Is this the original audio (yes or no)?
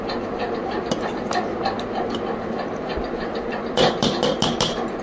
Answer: yes